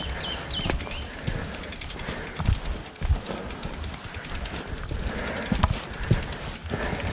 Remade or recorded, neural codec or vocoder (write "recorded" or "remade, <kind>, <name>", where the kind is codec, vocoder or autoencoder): recorded